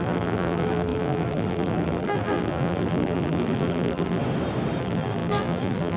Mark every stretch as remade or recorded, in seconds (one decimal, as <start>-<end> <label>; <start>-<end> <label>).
0.0-4.2 remade; 4.2-4.8 recorded; 4.8-6.0 remade